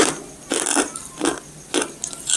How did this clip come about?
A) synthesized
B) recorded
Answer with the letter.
B